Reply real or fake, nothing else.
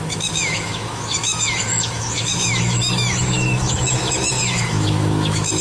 fake